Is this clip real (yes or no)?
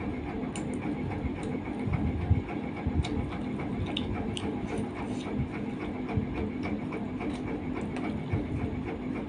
yes